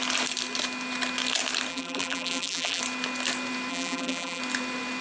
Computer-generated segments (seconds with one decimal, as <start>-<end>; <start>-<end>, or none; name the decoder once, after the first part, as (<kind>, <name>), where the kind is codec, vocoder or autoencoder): 1.7-2.8 (vocoder, BigVGAN v2); 3.7-4.4